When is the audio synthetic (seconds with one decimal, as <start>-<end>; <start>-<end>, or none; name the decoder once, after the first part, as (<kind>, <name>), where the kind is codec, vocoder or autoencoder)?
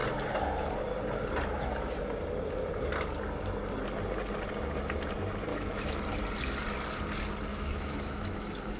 5.5-6.0 (autoencoder, DAC-VAE); 7.5-8.8